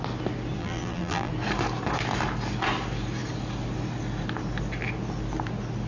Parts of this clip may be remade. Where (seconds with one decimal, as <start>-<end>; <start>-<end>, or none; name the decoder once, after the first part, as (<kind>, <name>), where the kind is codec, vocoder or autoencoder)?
0.6-1.3 (vocoder, BigVGAN v2)